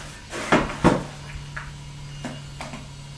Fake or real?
real